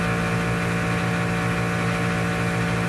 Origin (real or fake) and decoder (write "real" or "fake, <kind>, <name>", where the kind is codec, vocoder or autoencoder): real